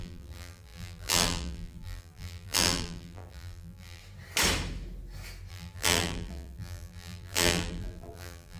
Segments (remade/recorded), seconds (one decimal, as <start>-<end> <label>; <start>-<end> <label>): 0.0-4.0 remade; 4.0-5.5 recorded; 5.5-8.6 remade